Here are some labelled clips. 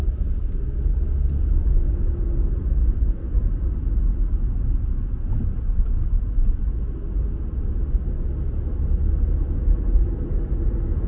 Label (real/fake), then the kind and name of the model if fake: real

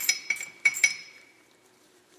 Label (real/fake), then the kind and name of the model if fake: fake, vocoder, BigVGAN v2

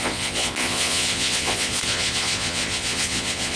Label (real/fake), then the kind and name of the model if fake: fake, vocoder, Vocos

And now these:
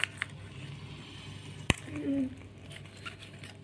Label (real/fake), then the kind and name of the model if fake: real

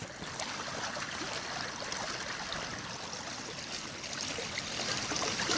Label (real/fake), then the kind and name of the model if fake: real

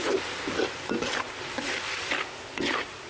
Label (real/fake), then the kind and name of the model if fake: real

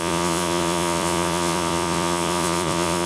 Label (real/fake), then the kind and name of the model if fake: fake, vocoder, Vocos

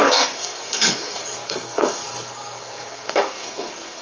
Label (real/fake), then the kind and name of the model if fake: fake, codec, SNAC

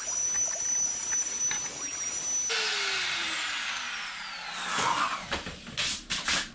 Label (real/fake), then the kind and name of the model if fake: real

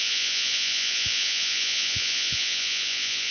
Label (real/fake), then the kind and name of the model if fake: fake, vocoder, Vocos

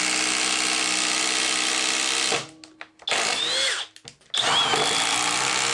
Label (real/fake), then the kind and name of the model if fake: real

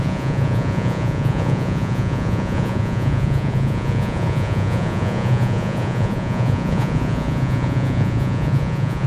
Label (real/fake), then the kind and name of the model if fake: fake, vocoder, Vocos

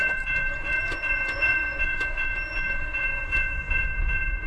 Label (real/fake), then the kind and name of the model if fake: fake, vocoder, Vocos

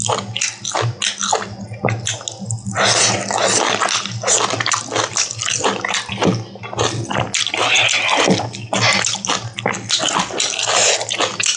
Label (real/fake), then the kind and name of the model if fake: real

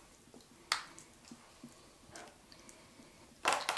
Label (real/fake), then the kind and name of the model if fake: real